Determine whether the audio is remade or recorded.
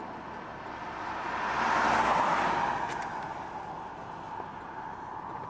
recorded